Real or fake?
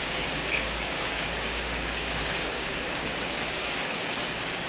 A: fake